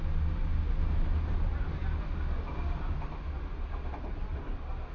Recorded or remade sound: recorded